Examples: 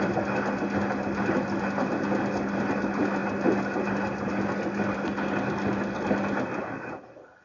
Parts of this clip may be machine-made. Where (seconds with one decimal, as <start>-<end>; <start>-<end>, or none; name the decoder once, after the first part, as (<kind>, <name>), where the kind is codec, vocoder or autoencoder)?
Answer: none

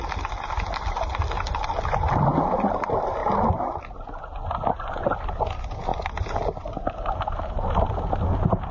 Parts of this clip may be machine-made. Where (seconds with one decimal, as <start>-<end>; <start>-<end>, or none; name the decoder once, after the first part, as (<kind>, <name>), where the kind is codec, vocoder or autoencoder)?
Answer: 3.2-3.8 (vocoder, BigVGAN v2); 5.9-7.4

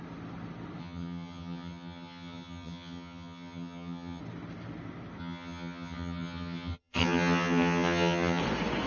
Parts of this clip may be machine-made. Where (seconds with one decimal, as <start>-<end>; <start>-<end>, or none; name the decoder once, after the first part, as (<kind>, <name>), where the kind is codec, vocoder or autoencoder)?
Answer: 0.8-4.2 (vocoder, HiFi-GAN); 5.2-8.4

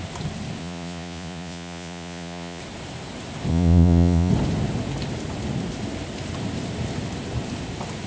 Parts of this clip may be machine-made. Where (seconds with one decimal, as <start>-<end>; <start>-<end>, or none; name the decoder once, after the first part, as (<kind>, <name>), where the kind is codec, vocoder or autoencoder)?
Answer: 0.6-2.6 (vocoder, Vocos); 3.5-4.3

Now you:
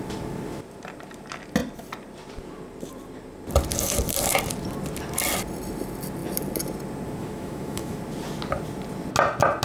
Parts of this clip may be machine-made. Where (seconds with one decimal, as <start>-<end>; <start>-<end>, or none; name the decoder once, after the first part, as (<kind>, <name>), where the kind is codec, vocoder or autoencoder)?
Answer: 7.2-8.0 (autoencoder, DAC-VAE)

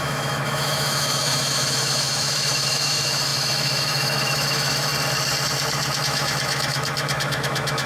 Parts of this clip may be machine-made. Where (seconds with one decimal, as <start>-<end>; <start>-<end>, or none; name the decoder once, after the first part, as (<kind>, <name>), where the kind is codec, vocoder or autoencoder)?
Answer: 0.0-4.9 (autoencoder, DAC-VAE); 6.0-7.9